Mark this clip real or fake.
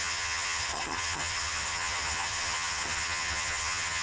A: fake